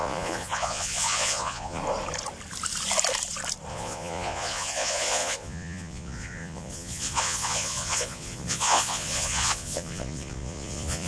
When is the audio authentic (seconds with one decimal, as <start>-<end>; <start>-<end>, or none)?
1.8-3.7